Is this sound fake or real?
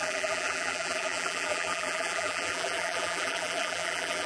fake